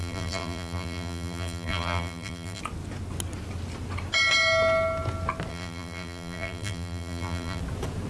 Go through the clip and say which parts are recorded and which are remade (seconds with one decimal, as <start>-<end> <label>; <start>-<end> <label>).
0.0-2.6 remade; 2.6-5.5 recorded; 5.5-7.6 remade; 7.6-8.1 recorded